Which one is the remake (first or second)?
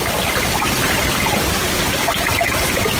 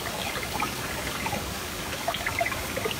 second